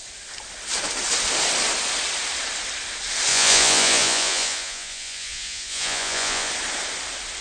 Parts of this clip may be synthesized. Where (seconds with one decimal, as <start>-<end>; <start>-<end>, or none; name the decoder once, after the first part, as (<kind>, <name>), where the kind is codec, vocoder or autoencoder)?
3.3-6.5 (vocoder, Vocos)